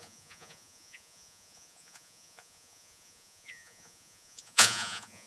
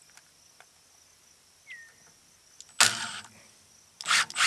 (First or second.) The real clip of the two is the second